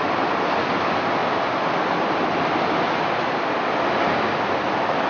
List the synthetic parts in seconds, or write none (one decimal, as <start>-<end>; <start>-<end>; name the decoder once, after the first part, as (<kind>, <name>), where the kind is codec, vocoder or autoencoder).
none